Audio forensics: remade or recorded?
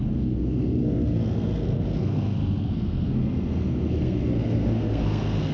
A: remade